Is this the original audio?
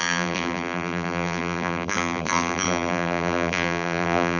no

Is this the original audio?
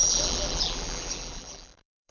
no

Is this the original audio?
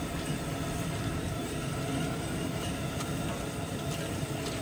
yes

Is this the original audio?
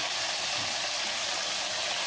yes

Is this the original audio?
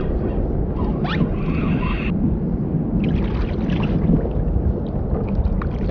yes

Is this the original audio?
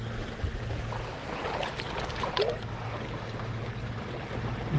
yes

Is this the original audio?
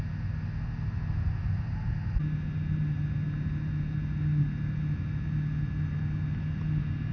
yes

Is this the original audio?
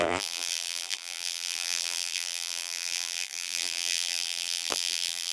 no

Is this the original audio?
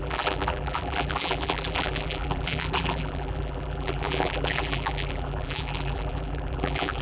no